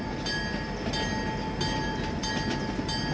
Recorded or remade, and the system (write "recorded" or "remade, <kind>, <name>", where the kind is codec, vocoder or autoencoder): recorded